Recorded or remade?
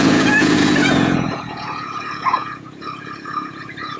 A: remade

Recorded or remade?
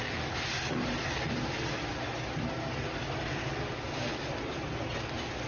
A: recorded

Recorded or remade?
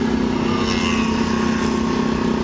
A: recorded